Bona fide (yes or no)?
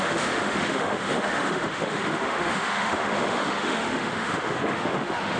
no